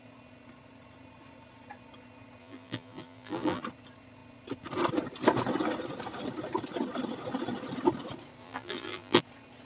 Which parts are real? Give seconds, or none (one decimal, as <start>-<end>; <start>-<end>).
0.0-2.4; 3.6-8.4; 9.2-9.7